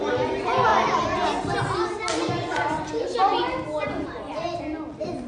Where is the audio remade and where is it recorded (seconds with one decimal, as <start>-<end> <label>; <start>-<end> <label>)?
0.0-0.7 remade; 0.7-3.9 recorded; 3.9-5.3 remade